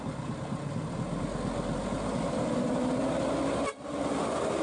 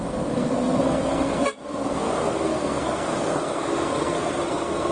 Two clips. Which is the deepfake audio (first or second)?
second